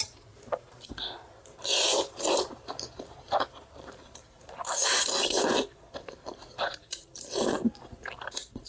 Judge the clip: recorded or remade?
remade